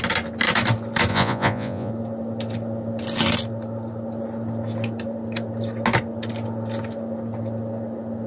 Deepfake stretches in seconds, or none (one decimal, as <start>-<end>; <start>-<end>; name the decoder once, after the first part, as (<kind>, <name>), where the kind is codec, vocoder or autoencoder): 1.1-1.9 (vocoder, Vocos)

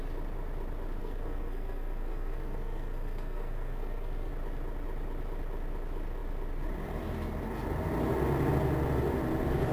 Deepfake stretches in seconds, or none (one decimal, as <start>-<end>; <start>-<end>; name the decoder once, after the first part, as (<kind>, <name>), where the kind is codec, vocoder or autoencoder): 1.0-4.3 (codec, SNAC)

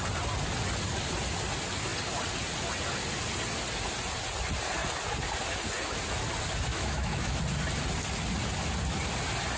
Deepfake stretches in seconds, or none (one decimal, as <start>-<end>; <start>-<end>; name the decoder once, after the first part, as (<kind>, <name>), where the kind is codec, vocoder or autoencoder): 6.7-7.4 (autoencoder, DAC-VAE)

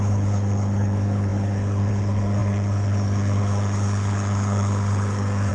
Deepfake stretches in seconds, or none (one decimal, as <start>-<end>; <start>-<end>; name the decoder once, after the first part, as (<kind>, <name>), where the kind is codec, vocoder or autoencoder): 0.0-5.5 (codec, HILCodec)

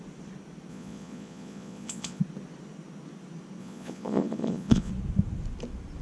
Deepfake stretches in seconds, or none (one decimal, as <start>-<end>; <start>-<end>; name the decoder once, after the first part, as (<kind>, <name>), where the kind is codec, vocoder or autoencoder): 0.7-2.2 (vocoder, Vocos); 3.6-4.9

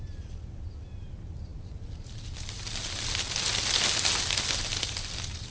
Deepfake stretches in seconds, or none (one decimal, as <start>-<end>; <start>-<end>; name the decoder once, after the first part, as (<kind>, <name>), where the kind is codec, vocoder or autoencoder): none

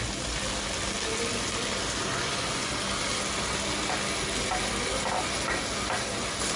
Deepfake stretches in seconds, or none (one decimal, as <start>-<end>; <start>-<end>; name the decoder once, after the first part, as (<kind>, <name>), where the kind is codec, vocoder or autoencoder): 2.1-2.7 (vocoder, Vocos)